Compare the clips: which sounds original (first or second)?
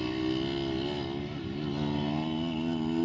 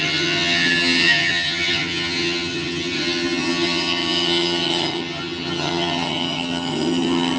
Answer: first